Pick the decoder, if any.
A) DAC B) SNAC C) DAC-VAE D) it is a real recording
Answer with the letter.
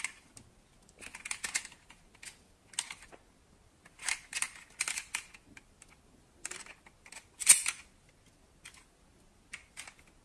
D